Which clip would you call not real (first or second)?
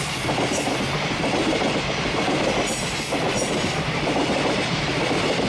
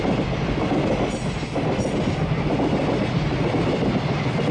first